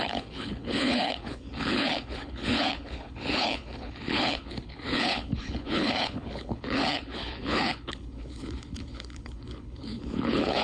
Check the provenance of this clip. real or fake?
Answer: fake